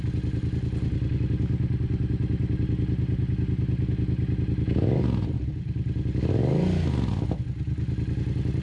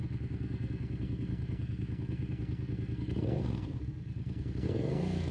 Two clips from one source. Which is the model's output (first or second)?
second